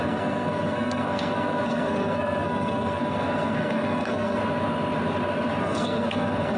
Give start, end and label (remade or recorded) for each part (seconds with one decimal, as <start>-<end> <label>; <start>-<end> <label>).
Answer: 0.0-4.4 remade; 4.4-5.6 recorded; 5.6-6.6 remade